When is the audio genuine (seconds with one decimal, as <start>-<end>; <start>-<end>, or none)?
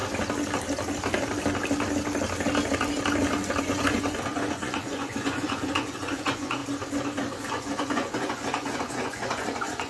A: 0.0-3.6; 6.6-7.5